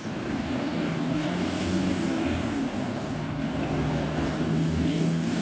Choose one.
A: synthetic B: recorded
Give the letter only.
A